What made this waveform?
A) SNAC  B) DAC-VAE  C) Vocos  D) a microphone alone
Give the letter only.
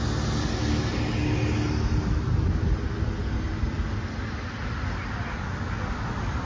D